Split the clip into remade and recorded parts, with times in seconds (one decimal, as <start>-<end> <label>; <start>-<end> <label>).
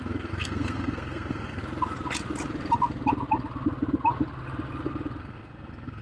0.0-1.6 remade; 1.6-5.2 recorded; 5.2-6.0 remade